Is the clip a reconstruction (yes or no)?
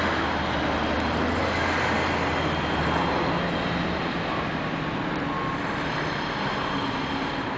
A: no